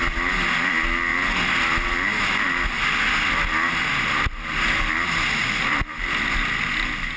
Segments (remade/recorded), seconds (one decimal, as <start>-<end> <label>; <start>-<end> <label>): 0.0-7.2 recorded